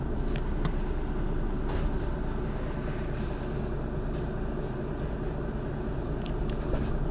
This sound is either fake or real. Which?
real